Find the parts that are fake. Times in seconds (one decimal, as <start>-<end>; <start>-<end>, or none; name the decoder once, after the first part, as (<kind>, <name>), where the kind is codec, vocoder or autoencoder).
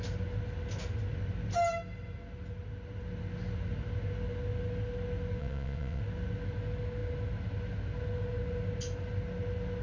5.4-6.0 (vocoder, WaveNeXt)